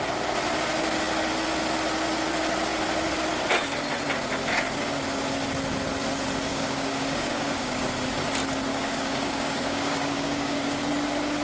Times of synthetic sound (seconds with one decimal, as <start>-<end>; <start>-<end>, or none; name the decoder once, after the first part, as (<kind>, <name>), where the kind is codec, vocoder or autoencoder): 6.5-7.8 (codec, DAC); 8.7-10.8